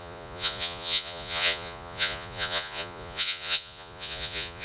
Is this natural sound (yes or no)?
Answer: no